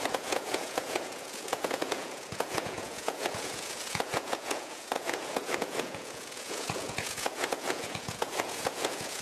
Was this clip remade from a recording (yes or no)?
yes